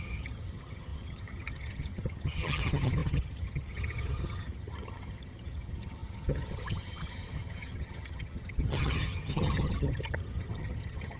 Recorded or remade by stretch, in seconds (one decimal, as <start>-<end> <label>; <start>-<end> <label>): 0.0-11.2 remade